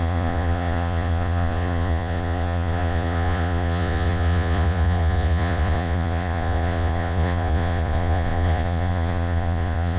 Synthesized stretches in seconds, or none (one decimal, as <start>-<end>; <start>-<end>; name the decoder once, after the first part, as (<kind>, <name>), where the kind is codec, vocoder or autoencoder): 0.0-10.0 (vocoder, Vocos)